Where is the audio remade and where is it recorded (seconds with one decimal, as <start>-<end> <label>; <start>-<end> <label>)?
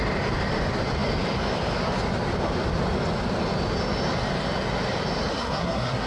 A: 0.0-5.3 recorded; 5.3-6.1 remade